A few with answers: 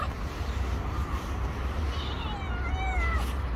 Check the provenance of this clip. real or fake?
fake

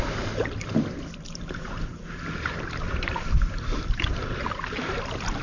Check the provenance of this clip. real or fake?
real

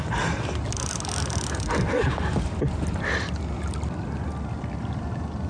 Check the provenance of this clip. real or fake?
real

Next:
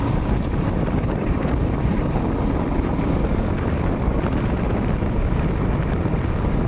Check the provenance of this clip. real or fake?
fake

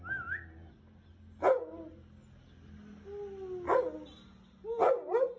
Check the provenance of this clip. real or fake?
real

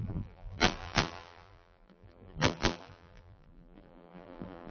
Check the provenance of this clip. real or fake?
fake